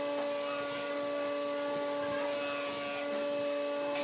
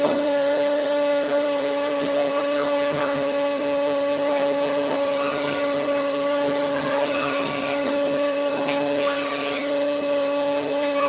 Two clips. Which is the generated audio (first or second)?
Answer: second